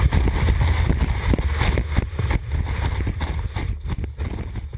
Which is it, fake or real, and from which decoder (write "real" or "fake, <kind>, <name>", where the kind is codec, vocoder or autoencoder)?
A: real